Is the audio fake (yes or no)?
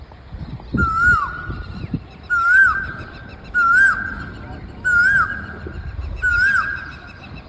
no